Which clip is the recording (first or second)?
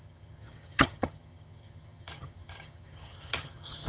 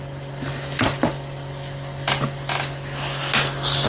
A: second